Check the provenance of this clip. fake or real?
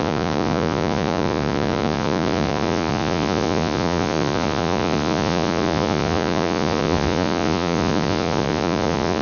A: fake